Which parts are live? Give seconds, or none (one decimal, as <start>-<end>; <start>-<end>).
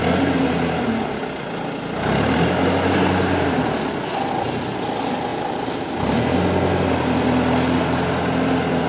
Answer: 0.0-5.3; 5.9-8.9